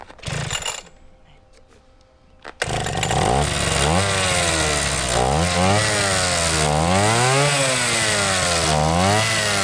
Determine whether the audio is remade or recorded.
recorded